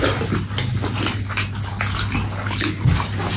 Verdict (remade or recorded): recorded